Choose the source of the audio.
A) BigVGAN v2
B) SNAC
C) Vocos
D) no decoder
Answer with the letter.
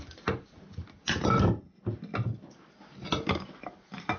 D